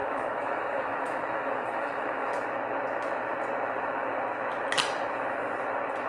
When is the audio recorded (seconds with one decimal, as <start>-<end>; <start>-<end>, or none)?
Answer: 2.3-6.1